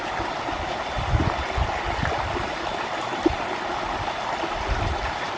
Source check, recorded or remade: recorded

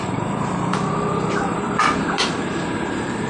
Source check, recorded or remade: remade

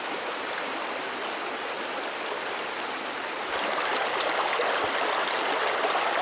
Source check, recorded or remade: recorded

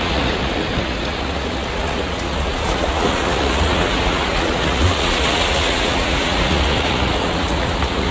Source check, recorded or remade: remade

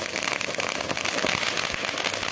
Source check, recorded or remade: recorded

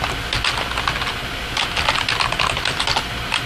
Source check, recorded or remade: recorded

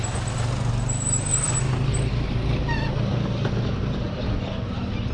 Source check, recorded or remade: recorded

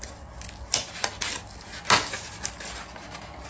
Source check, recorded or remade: recorded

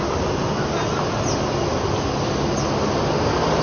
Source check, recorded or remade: recorded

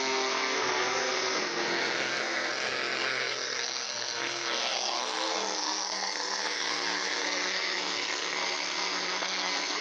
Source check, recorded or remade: remade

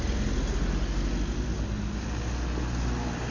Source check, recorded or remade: recorded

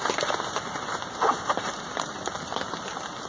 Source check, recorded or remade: recorded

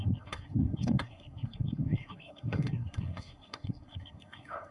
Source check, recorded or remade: remade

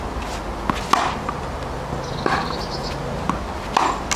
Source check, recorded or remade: recorded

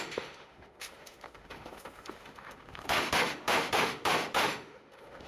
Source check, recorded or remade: remade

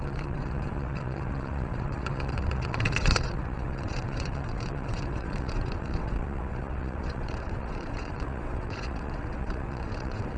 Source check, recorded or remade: remade